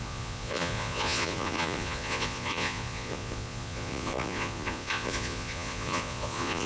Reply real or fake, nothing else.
fake